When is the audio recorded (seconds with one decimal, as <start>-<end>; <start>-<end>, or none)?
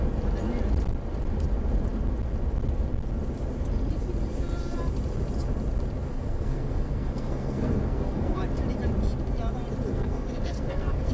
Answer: 0.0-6.1; 8.4-9.9